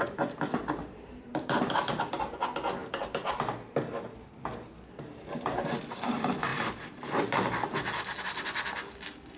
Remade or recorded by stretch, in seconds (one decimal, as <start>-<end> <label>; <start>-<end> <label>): 0.0-0.5 recorded; 0.5-1.9 remade; 1.9-2.8 recorded; 2.8-3.3 remade; 3.3-6.5 recorded; 6.5-7.2 remade; 7.2-9.4 recorded

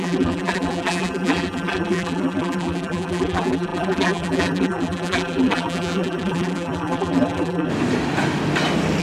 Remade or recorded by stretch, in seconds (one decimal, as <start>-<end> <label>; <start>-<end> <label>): 0.0-7.7 remade; 7.7-9.0 recorded

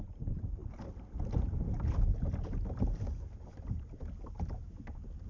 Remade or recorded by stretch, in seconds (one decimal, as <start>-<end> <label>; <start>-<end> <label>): 0.0-5.3 recorded